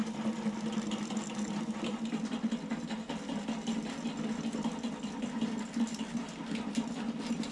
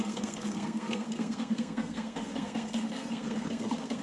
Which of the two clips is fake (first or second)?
second